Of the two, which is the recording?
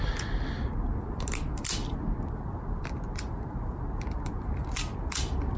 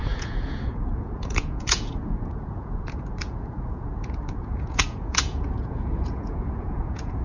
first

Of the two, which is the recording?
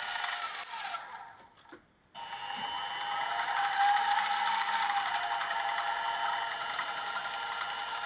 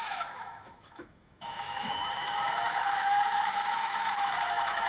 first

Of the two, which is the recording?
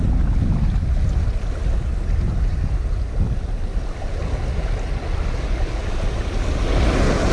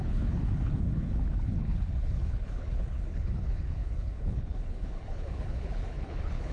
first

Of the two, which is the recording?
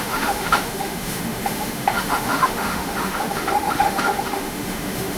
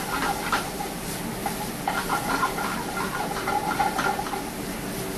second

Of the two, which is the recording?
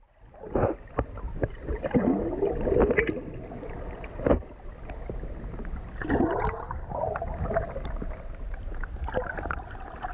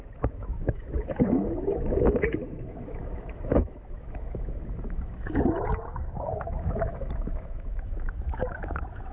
first